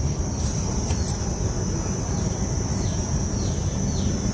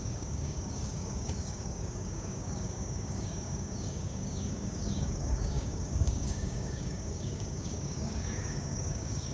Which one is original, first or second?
first